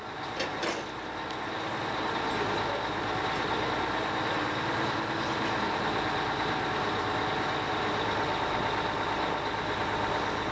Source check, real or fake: real